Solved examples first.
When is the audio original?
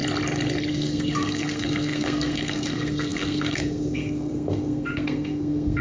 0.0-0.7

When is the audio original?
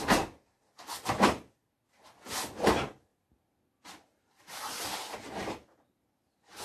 0.0-6.6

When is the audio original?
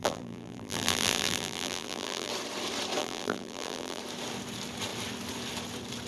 2.3-3.0; 4.0-6.1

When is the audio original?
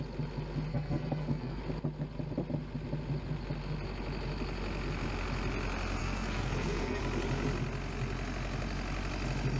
0.0-0.7; 1.6-6.0; 7.0-9.6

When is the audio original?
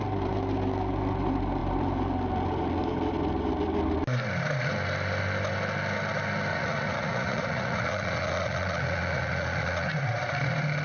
0.0-6.5; 10.1-10.8